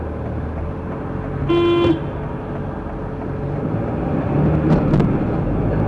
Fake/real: real